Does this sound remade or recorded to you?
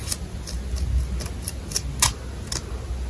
recorded